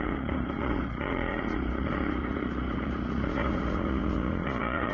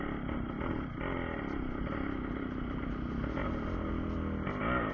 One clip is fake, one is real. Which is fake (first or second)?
first